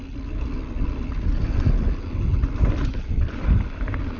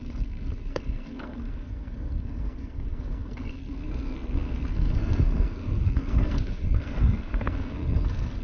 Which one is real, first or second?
first